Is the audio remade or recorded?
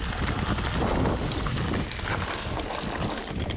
recorded